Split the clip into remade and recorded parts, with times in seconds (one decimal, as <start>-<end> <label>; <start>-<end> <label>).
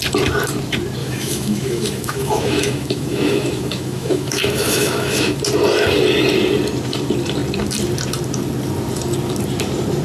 0.0-1.0 recorded; 1.0-5.4 remade; 5.4-10.0 recorded